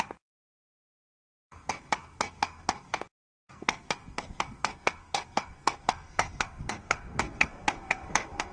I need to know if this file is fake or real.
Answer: fake